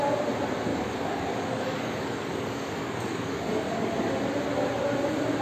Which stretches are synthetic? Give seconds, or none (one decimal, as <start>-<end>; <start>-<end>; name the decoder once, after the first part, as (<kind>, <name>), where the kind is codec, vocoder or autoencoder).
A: 0.7-3.9 (codec, DAC)